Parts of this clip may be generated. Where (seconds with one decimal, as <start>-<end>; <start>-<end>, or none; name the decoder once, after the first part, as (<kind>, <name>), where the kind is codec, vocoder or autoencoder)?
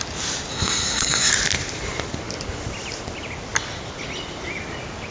0.5-1.3 (codec, SNAC)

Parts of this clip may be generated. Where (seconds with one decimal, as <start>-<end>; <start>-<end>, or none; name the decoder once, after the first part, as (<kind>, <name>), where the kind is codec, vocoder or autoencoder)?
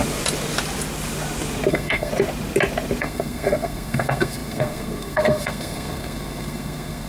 1.7-2.1 (codec, SNAC); 3.0-7.1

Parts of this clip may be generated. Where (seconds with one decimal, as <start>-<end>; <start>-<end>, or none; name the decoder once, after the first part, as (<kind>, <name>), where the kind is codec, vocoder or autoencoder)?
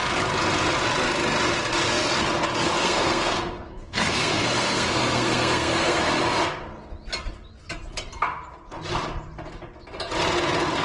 2.8-6.1 (codec, SNAC)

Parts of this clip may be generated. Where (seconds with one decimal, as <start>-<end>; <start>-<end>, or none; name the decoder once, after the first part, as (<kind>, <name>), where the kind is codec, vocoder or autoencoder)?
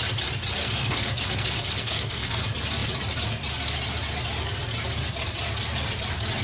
0.6-2.4 (codec, SNAC)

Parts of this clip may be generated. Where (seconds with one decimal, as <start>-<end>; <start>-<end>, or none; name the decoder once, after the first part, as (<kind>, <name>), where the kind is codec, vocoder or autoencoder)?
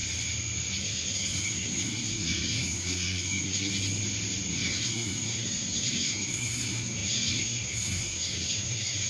0.8-3.7 (codec, SNAC); 4.5-9.1